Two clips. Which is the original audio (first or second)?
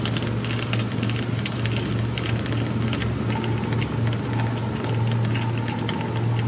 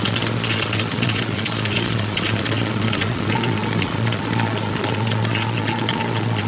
first